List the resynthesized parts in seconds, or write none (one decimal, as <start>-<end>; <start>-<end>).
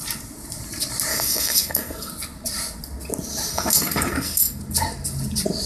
1.1-2.1; 3.5-4.6